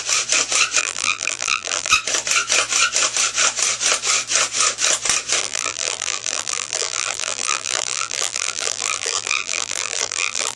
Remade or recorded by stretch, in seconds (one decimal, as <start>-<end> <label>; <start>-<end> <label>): 0.0-0.8 recorded; 0.8-1.9 remade; 1.9-5.4 recorded; 5.4-10.6 remade